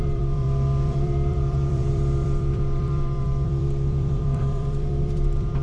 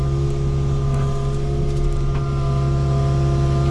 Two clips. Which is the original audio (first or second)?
second